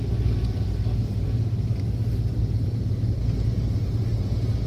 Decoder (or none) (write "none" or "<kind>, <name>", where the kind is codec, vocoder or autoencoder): none